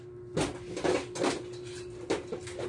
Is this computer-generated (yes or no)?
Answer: no